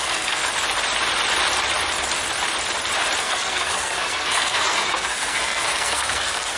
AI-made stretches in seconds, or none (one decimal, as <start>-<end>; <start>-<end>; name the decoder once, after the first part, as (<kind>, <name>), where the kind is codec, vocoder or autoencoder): 0.0-0.4 (codec, SNAC); 3.2-6.6